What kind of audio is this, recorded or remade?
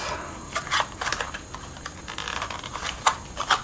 recorded